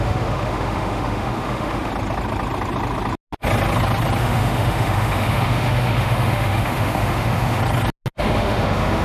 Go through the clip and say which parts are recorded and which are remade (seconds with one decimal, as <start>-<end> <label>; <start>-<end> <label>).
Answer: 0.0-1.9 remade; 1.9-4.2 recorded; 4.2-7.6 remade; 7.6-8.2 recorded; 8.2-9.0 remade

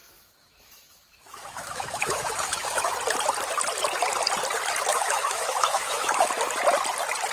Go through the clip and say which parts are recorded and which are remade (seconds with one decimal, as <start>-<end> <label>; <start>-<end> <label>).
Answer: 0.0-2.9 remade; 2.9-4.9 recorded; 4.9-6.3 remade; 6.3-7.3 recorded